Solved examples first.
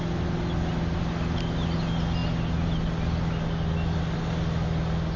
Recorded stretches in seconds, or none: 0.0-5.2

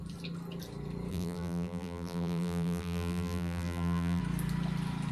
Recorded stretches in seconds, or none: 0.0-1.1; 4.2-5.1

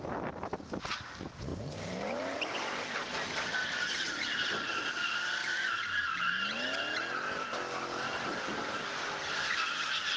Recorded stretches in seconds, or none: 0.0-1.5; 3.0-3.6; 4.5-5.4; 6.3-10.2

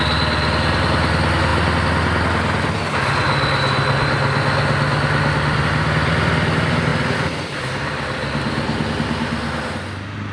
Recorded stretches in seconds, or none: 0.0-6.9; 8.9-10.3

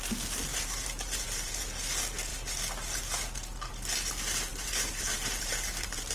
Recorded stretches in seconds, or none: 0.0-0.5; 1.6-4.5

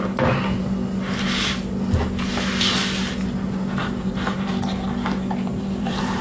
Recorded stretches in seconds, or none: 0.0-3.8; 4.5-5.5

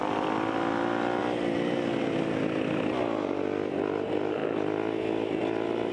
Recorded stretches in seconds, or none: 0.0-5.9